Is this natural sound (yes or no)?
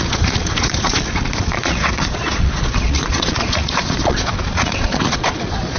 no